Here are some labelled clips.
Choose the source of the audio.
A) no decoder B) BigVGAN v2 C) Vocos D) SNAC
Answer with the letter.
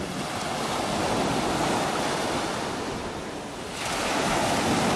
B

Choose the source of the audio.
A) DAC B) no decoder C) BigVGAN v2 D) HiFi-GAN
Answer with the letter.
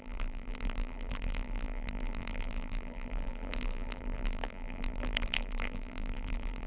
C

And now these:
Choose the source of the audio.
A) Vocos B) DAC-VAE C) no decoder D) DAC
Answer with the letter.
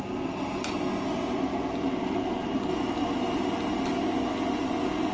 C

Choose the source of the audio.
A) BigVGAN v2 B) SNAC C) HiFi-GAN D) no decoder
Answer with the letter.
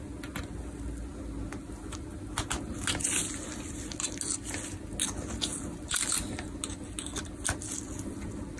D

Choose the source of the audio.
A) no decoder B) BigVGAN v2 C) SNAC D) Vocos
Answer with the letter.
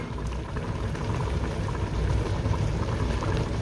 B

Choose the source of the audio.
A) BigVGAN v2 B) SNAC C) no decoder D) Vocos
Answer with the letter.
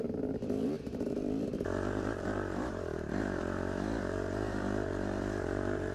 A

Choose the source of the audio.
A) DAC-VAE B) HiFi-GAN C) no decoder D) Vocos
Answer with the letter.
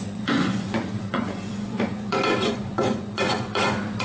D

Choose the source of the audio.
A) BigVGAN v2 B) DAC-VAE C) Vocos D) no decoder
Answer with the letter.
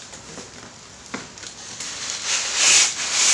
D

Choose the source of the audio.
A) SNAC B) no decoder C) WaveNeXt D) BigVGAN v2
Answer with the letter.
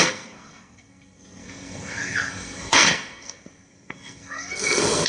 A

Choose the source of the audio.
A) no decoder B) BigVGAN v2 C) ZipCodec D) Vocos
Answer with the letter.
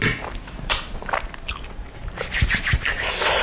A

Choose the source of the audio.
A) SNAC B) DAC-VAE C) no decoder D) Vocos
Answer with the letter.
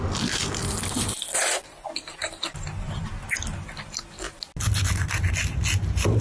C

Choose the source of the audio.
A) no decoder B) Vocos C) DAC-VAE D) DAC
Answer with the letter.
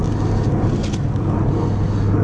A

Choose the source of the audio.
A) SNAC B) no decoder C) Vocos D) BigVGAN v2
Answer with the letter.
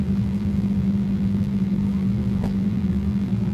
D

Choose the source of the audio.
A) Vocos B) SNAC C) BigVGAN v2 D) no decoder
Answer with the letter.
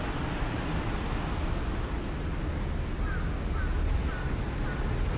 D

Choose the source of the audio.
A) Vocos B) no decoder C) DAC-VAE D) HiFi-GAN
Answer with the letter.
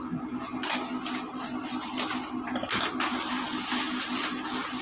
B